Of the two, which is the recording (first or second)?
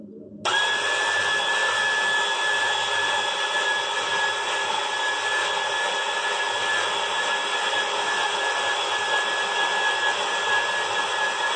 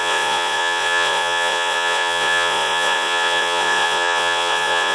first